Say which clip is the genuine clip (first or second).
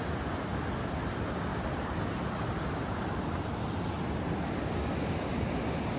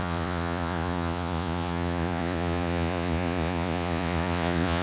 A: first